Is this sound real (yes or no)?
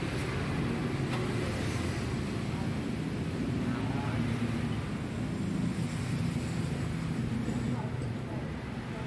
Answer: yes